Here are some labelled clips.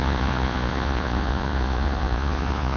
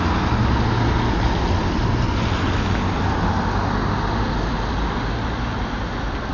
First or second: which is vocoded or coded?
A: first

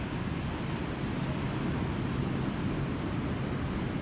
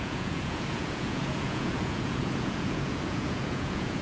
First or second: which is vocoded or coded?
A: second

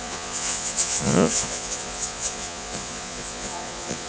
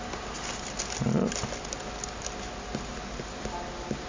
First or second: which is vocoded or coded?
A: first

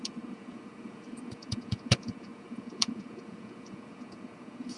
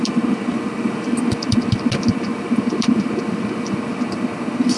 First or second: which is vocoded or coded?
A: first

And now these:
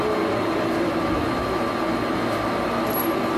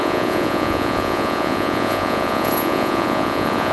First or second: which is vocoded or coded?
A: second